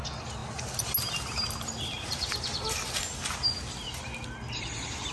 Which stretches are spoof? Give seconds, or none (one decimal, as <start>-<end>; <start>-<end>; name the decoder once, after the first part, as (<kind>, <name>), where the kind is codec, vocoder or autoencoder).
none